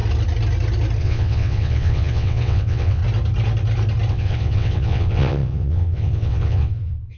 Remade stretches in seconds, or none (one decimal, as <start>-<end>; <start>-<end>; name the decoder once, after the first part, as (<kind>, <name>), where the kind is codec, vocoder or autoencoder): 1.0-3.0 (vocoder, WaveNeXt); 4.1-7.2